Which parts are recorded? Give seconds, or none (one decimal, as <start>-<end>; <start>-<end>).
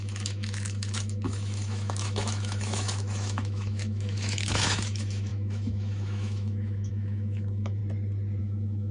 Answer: 7.8-8.4